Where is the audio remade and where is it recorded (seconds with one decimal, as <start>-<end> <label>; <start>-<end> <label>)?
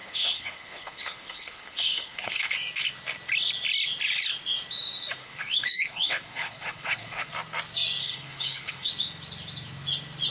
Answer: 0.0-2.5 remade; 2.5-5.2 recorded; 5.2-7.3 remade; 7.3-8.0 recorded; 8.0-8.9 remade; 8.9-10.3 recorded